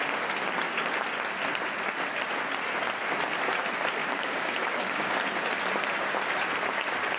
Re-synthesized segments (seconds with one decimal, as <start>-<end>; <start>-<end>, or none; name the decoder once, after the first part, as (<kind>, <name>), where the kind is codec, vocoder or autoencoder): 4.0-5.2 (codec, DAC)

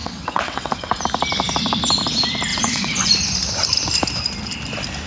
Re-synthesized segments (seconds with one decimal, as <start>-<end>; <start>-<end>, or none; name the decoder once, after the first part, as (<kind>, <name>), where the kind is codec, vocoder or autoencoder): 0.0-1.0 (vocoder, WaveNeXt); 2.5-3.1